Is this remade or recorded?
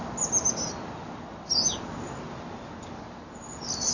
recorded